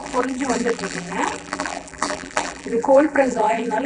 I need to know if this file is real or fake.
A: fake